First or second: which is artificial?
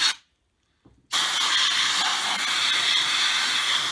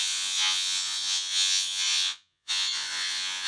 second